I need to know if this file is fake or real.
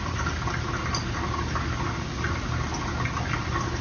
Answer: real